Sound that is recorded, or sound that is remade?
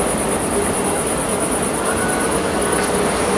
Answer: recorded